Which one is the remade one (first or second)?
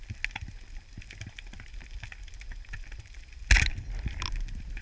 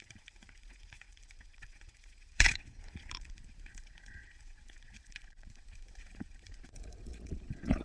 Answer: second